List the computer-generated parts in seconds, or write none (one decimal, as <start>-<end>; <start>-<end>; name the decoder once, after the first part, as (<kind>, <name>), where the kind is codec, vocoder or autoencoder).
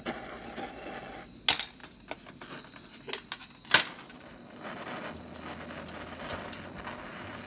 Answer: none